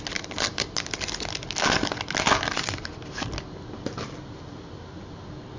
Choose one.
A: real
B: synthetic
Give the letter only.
A